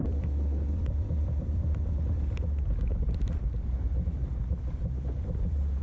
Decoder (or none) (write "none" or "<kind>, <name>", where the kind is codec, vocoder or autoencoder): vocoder, BigVGAN v2